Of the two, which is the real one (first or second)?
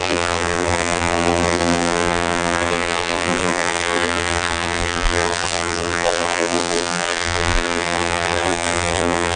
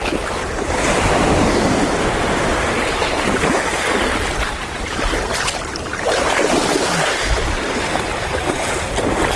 second